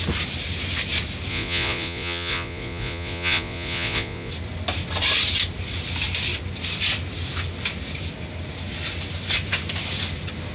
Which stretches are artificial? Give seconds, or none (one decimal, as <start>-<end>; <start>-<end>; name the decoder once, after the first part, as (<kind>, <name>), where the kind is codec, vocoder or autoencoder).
1.3-4.3 (vocoder, Vocos)